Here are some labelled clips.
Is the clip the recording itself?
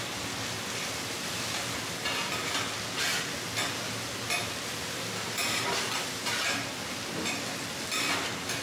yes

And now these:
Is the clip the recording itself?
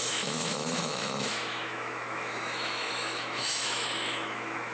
no